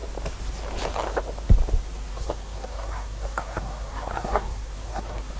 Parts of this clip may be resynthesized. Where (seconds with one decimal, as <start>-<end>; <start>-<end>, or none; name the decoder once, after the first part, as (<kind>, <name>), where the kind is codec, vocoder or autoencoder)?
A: 2.1-5.4 (codec, SNAC)